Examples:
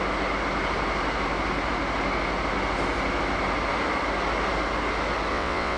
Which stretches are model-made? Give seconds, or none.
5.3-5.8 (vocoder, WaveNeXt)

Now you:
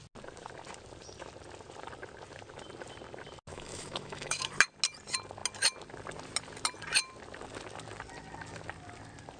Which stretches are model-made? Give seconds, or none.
3.5-4.5 (autoencoder, DAC-VAE)

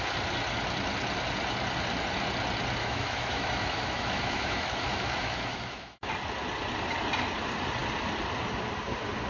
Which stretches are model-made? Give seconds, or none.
2.8-6.1 (autoencoder, DAC-VAE)

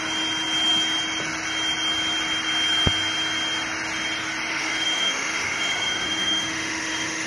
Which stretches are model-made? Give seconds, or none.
4.5-7.3 (autoencoder, DAC-VAE)

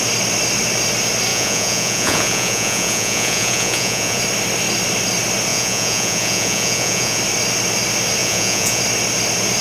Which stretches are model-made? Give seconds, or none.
1.3-4.2 (vocoder, Vocos); 5.5-7.2; 8.2-8.8

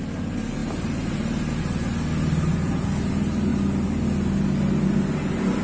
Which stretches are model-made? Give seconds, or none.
2.5-3.1 (vocoder, Vocos)

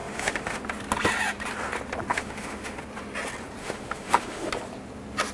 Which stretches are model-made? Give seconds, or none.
0.0-0.6 (autoencoder, DAC-VAE); 2.1-2.8; 3.6-4.5

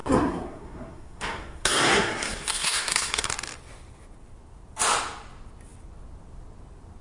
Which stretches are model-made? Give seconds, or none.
0.0-3.3 (codec, SNAC)